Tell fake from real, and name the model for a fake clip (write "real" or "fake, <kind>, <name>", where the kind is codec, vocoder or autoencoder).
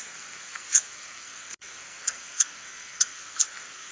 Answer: fake, codec, SNAC